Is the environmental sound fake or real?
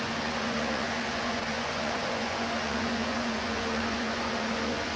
fake